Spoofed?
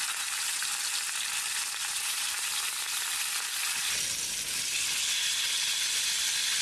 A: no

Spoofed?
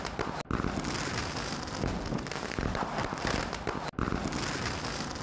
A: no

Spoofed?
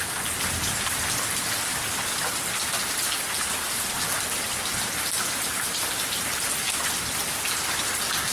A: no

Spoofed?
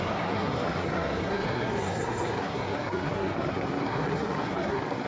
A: yes